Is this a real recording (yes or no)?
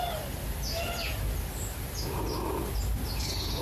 yes